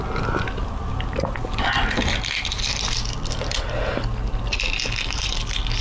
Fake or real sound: real